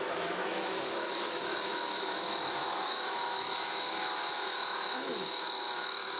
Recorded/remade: remade